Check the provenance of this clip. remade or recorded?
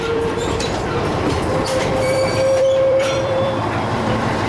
remade